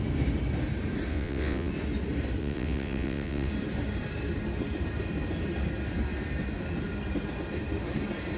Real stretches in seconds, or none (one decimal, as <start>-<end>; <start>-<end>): 0.0-1.1; 1.7-2.4; 3.5-8.4